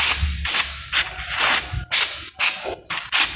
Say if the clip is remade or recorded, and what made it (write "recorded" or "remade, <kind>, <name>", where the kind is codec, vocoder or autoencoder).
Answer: recorded